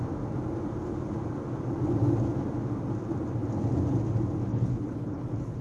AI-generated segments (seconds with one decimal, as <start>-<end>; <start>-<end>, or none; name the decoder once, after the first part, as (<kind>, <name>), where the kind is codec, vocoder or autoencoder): 4.5-5.6 (codec, HILCodec)